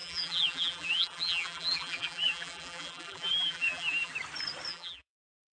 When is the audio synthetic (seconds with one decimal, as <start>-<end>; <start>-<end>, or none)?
0.0-4.1; 4.7-5.5